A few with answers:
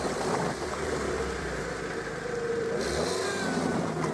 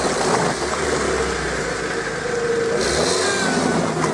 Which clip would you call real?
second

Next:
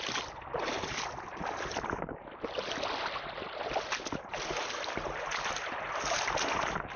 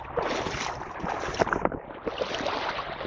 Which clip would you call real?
first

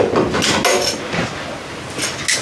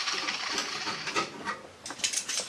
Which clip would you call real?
first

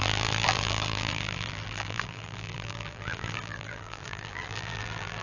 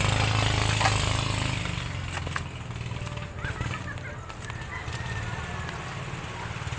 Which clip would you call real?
second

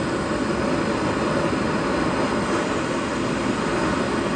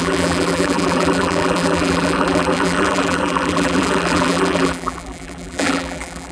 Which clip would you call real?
first